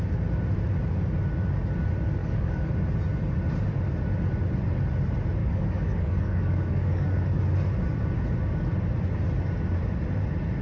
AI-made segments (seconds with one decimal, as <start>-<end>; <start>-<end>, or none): 2.2-2.7; 5.4-7.4